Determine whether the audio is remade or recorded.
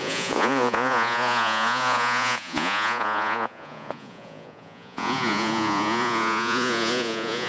remade